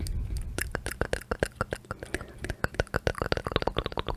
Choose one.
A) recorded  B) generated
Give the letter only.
A